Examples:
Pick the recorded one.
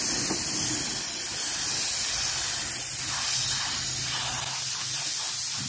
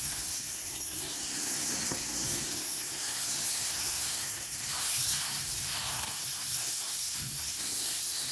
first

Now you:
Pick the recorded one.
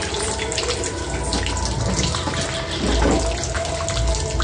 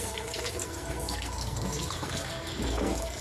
first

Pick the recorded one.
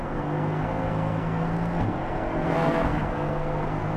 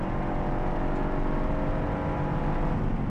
second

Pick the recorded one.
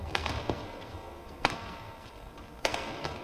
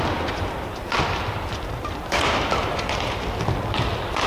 second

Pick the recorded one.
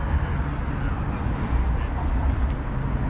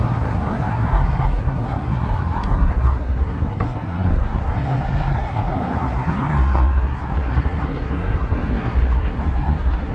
first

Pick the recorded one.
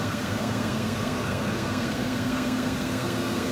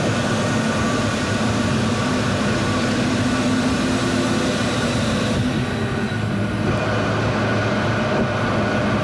second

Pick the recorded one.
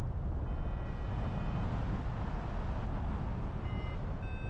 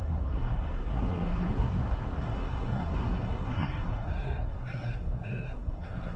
first